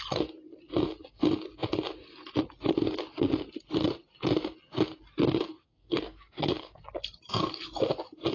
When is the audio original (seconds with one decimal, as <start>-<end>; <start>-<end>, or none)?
0.0-5.6; 6.8-8.3